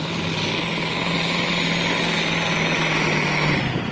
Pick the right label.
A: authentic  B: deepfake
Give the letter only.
A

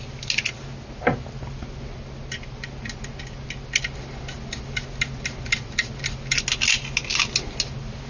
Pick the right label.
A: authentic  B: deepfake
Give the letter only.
A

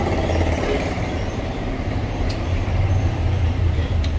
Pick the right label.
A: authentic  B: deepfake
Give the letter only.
B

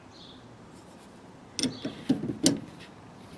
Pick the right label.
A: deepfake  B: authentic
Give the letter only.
B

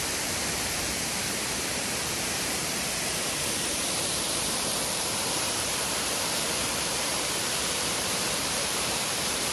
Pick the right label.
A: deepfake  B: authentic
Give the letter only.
A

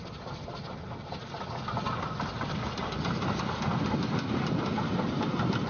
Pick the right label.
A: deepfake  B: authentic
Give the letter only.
B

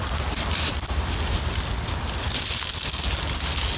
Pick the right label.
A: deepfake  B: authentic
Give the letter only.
B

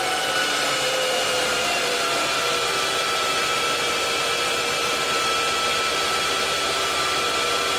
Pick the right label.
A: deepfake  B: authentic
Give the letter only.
A